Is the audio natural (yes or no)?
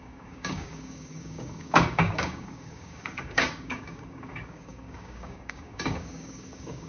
no